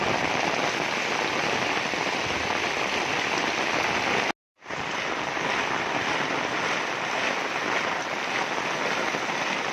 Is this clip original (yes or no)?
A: yes